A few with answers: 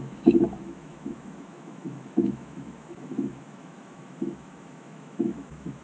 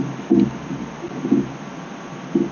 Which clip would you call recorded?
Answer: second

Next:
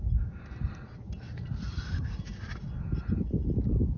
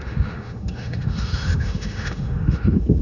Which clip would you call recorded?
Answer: first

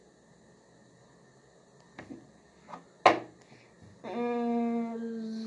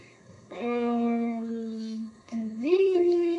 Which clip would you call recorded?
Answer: first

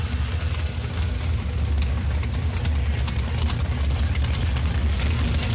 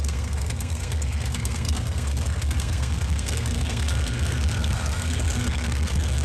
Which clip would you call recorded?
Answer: first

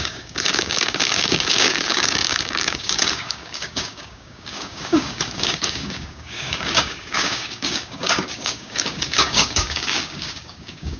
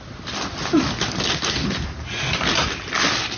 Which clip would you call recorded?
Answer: second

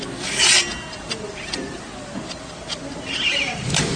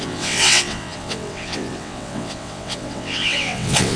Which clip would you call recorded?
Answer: first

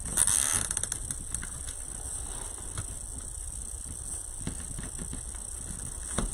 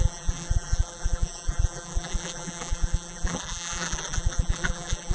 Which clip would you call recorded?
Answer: first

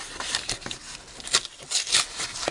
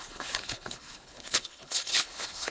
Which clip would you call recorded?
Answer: first